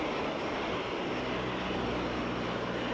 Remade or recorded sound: recorded